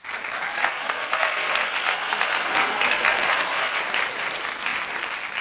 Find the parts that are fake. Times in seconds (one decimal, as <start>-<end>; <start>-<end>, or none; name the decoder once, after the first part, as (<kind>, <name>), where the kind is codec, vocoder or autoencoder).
0.6-3.8 (codec, SNAC)